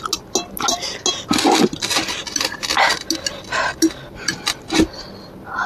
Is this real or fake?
real